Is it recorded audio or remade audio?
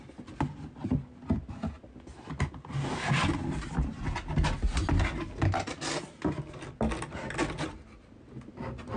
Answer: recorded